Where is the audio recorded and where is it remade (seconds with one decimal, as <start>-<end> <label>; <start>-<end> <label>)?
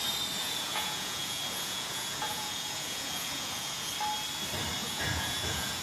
0.0-0.4 recorded; 0.4-3.9 remade; 3.9-4.8 recorded; 4.8-5.8 remade